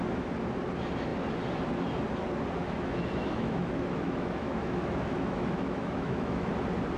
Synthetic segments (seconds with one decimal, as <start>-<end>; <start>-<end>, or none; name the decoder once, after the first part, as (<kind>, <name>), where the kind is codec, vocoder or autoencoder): 2.6-6.5 (autoencoder, DAC-VAE)